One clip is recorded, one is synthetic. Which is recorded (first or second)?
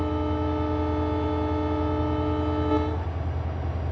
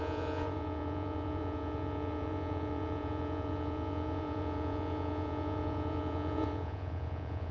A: first